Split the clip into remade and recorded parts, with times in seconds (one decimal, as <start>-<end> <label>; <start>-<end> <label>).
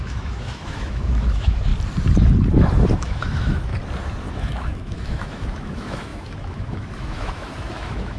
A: 0.0-1.7 remade; 1.7-2.9 recorded; 2.9-3.7 remade; 3.7-4.3 recorded; 4.3-8.2 remade